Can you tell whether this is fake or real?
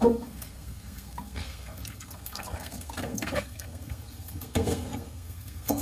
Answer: fake